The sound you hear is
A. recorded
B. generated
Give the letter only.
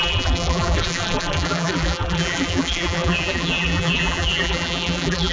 B